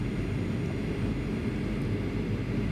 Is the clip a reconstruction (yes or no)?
no